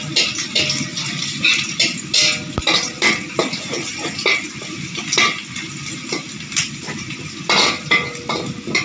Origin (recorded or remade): recorded